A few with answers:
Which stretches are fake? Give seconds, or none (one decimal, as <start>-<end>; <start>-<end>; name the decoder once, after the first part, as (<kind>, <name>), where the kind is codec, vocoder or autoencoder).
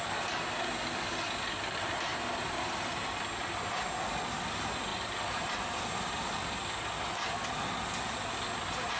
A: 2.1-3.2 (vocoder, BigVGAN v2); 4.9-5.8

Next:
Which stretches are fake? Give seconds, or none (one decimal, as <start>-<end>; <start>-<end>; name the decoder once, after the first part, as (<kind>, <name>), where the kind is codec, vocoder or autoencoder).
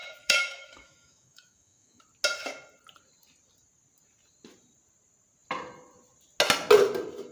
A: 0.0-2.0 (autoencoder, DAC-VAE)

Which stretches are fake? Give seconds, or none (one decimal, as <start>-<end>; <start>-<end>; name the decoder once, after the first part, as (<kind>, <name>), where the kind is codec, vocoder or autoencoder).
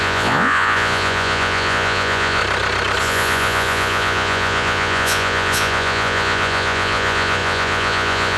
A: 0.0-2.4 (vocoder, Vocos); 3.0-8.4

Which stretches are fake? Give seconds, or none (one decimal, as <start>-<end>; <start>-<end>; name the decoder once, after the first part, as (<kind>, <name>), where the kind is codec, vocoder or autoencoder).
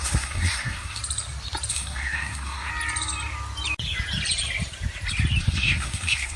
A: 0.0-1.0 (codec, SNAC); 1.7-2.7; 5.4-6.4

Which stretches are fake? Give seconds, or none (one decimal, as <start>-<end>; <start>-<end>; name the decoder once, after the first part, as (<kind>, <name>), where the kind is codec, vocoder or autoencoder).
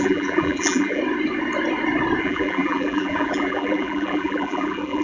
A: 0.0-1.0 (vocoder, BigVGAN v2); 2.2-5.0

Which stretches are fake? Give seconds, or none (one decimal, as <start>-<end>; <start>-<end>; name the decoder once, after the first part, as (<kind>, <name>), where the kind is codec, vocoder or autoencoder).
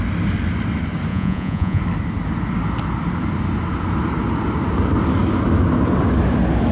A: 1.1-1.8 (vocoder, Vocos)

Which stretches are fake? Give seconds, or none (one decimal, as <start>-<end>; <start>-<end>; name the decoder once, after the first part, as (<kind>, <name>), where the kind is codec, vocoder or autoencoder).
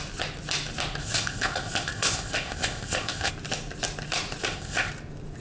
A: 1.0-3.3 (codec, ZipCodec); 4.4-4.9